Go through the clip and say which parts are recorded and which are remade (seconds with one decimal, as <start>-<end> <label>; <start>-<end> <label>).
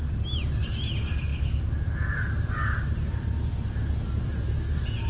0.0-5.1 recorded